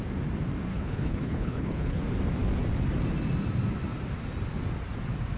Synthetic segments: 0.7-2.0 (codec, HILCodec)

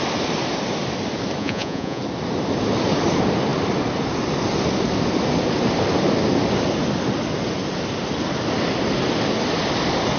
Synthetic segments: 1.4-2.0 (vocoder, Vocos)

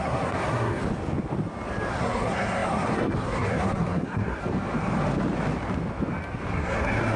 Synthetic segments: 0.0-0.8 (codec, SNAC); 1.9-4.4; 6.5-7.2

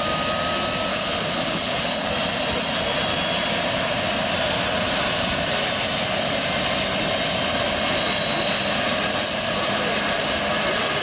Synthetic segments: 0.9-2.1 (codec, HILCodec)

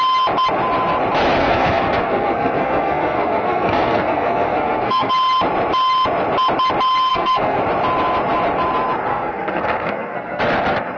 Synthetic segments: 1.4-5.1 (codec, SNAC); 7.1-7.6; 9.1-10.4

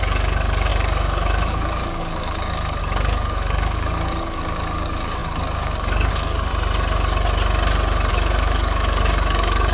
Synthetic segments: 0.0-6.5 (codec, DAC); 8.1-9.7

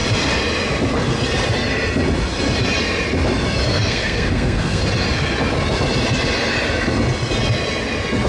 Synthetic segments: 3.7-4.8 (codec, SNAC)

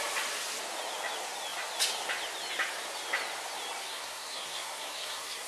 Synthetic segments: 3.8-5.5 (codec, SNAC)